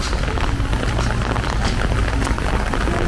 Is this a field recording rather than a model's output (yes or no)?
yes